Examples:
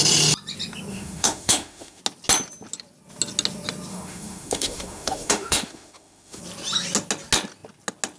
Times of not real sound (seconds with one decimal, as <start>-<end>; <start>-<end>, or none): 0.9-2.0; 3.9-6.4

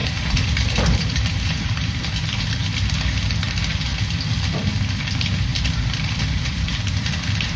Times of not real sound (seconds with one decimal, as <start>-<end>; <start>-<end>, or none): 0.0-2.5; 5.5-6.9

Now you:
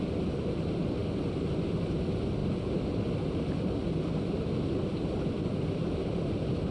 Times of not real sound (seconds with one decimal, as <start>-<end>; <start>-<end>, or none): none

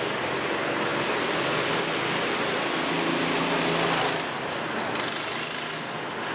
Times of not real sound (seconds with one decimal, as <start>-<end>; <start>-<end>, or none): none